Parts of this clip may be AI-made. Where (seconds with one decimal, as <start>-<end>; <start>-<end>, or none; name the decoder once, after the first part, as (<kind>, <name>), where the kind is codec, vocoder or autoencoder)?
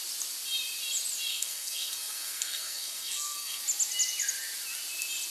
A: 1.3-3.6 (codec, SNAC)